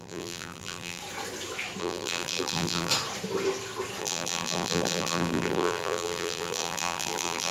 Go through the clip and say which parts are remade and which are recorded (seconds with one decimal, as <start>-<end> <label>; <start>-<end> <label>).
0.0-1.0 remade; 1.0-1.8 recorded; 1.8-2.9 remade; 2.9-4.0 recorded; 4.0-7.5 remade